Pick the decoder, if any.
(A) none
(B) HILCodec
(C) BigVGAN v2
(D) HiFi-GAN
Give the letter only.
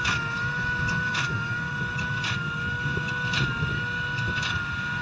A